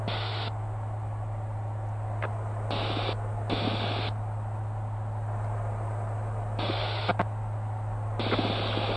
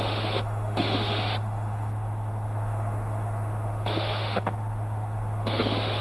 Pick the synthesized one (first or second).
second